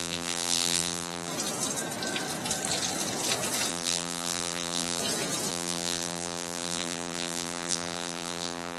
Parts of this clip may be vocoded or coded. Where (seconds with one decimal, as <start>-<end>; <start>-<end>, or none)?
0.0-1.3; 3.7-5.0; 5.5-8.8